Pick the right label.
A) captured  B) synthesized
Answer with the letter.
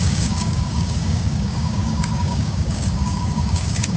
B